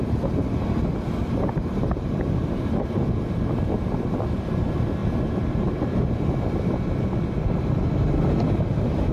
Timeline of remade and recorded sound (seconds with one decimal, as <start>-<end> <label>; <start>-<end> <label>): 0.0-9.1 recorded